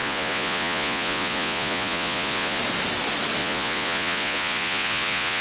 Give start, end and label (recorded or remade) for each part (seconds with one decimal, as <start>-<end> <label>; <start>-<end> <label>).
0.0-2.6 remade; 2.6-3.4 recorded; 3.4-5.4 remade